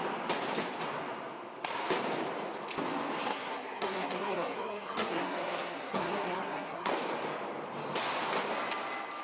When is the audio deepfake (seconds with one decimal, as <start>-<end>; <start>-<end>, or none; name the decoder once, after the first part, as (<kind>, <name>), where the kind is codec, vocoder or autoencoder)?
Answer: 3.3-6.9 (codec, SNAC)